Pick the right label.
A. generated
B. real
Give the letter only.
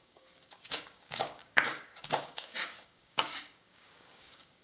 A